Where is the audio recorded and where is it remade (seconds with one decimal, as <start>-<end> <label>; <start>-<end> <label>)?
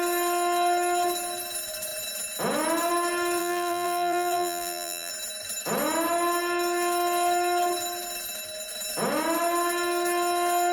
0.0-3.4 recorded; 3.4-5.1 remade; 5.1-10.7 recorded